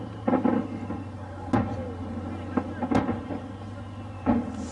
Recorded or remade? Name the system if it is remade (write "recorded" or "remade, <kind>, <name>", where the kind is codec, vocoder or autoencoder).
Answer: recorded